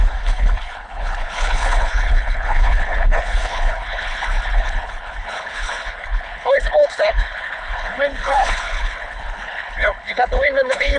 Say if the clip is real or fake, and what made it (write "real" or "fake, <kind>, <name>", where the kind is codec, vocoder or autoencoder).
fake, codec, HILCodec